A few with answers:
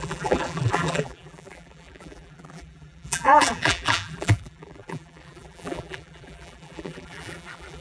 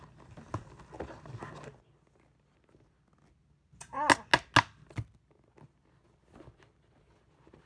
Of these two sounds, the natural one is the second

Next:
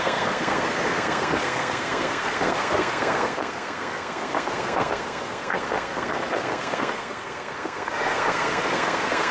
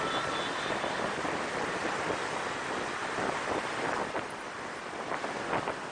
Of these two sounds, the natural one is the second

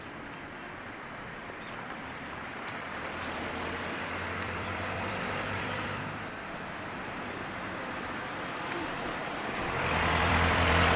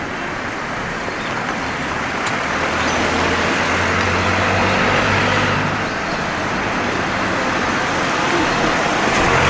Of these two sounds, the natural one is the second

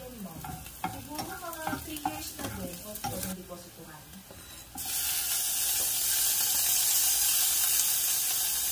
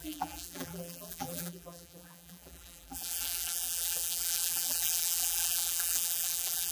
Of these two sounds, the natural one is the first